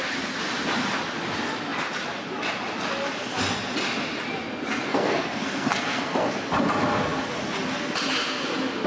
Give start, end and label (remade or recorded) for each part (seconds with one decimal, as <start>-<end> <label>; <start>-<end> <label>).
0.0-4.9 recorded; 4.9-6.3 remade; 6.3-8.9 recorded